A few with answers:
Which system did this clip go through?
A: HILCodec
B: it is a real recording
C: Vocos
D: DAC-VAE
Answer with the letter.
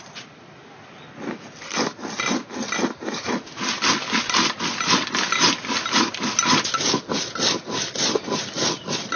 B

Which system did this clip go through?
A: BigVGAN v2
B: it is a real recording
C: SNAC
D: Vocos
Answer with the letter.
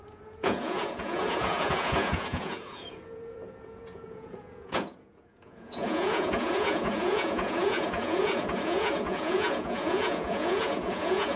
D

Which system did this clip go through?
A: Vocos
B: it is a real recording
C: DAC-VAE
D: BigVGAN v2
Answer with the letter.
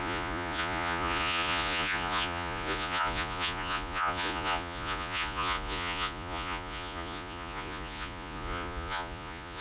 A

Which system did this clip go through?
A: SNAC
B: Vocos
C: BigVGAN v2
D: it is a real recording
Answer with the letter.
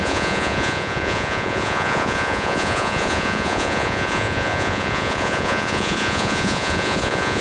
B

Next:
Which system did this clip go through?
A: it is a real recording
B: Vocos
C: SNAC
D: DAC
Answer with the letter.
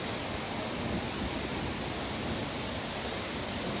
A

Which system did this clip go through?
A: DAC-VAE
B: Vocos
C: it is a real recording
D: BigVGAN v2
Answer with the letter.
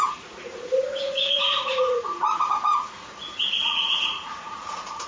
B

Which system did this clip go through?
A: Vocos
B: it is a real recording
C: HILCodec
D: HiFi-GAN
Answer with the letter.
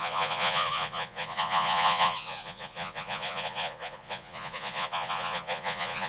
A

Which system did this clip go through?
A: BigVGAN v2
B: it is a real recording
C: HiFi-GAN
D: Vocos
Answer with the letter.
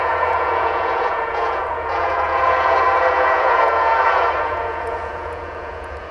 D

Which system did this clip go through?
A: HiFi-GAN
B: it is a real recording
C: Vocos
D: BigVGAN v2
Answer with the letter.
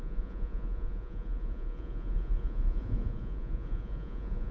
C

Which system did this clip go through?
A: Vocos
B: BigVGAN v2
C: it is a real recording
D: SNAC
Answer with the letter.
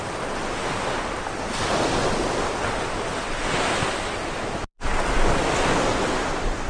C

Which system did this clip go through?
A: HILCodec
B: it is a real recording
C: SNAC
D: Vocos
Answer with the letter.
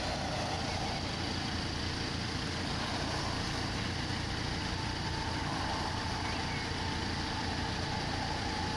B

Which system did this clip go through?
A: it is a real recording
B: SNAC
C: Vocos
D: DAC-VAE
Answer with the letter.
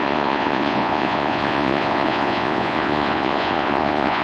C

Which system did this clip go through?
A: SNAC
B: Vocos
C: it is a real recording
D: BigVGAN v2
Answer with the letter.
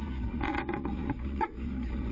B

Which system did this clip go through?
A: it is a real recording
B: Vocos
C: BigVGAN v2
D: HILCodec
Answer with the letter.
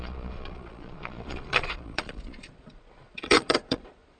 B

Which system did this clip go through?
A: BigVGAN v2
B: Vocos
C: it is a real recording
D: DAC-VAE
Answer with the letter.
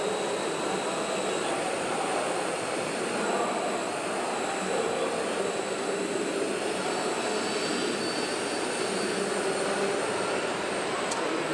C